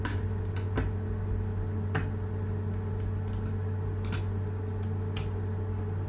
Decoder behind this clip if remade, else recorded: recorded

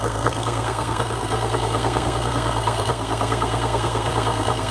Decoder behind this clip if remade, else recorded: remade, codec, SNAC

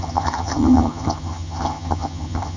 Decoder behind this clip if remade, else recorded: remade, vocoder, HiFi-GAN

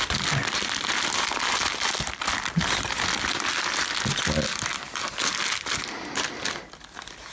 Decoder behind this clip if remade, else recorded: recorded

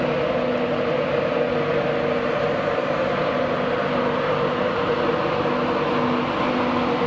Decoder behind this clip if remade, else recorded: recorded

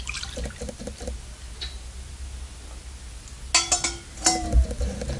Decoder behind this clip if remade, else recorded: recorded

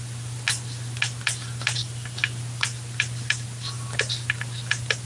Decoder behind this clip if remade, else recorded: recorded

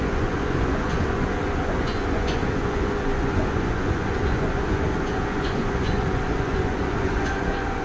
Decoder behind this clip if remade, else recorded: remade, vocoder, Vocos